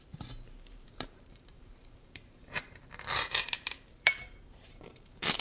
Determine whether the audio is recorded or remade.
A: remade